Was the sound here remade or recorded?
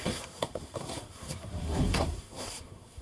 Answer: remade